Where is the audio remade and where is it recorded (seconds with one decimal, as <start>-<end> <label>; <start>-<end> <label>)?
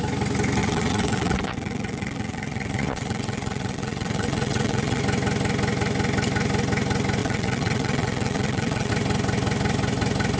0.0-0.6 recorded; 0.6-5.0 remade; 5.0-7.2 recorded; 7.2-8.9 remade; 8.9-10.4 recorded